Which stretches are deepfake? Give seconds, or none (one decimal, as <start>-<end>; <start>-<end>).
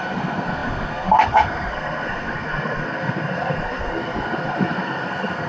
0.0-5.5